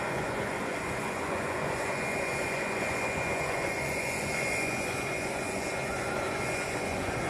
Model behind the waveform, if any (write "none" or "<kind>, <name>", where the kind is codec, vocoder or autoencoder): vocoder, Vocos